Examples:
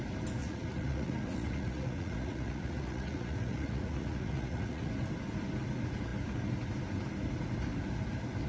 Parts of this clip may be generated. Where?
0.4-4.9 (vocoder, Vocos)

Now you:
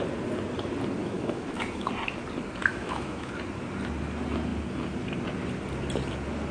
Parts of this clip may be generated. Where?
1.0-1.9 (autoencoder, DAC-VAE); 2.6-3.3

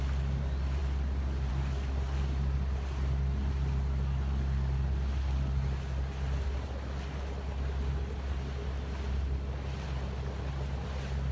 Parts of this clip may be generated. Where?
none

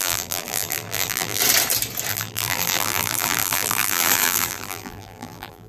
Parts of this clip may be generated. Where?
0.0-1.4 (vocoder, BigVGAN v2); 2.1-5.7

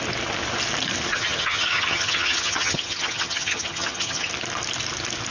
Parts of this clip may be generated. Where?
1.1-4.3 (vocoder, HiFi-GAN)

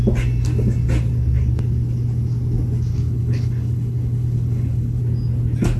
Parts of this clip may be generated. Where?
2.9-5.0 (codec, HILCodec)

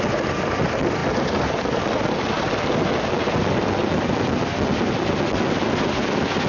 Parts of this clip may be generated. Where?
none

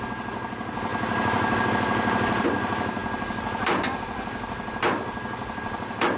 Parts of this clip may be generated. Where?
none